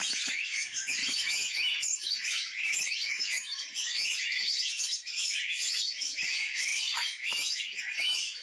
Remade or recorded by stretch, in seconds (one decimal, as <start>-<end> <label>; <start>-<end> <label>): 0.0-8.4 remade